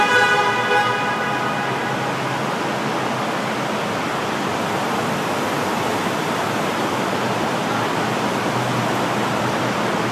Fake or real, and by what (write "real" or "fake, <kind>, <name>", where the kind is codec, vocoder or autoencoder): real